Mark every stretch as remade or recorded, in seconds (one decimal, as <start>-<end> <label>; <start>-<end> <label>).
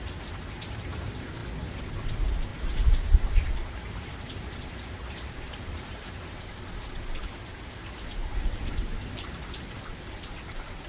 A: 0.0-2.5 recorded; 2.5-6.4 remade; 6.4-8.2 recorded; 8.2-8.7 remade; 8.7-10.9 recorded